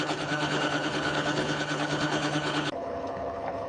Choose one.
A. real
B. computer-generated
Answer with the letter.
B